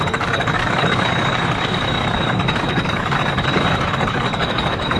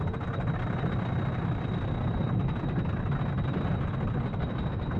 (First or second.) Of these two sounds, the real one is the second